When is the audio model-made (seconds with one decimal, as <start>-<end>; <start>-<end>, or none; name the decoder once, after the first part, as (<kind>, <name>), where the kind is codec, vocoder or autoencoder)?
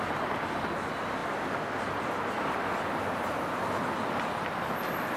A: none